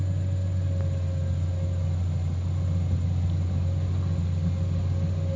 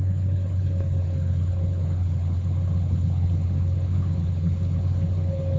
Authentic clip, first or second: first